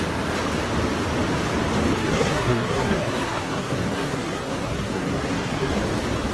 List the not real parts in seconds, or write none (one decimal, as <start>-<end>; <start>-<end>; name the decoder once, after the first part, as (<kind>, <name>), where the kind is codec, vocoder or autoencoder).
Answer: 2.0-5.8 (codec, SNAC)